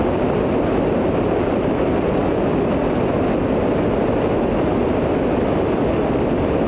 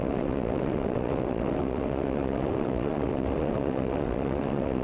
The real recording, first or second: first